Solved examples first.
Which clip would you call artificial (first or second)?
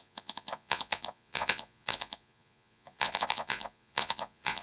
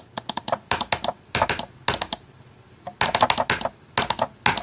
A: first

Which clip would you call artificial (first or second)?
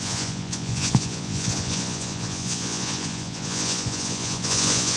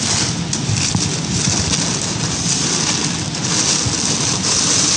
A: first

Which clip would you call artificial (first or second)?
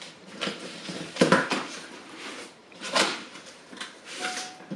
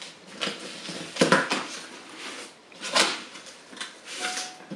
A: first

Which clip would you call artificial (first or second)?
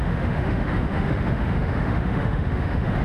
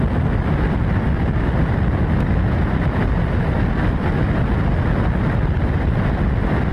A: first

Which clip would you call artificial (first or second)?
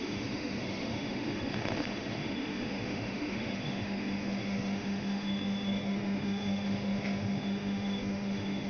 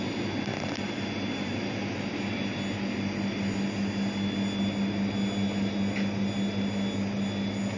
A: first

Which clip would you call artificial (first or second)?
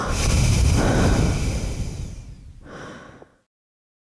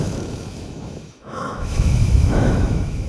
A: second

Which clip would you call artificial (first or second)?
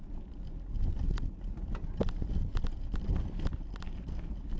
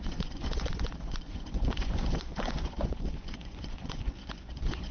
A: second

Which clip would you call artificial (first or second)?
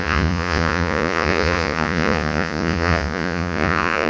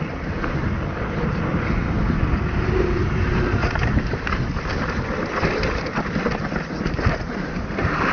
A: first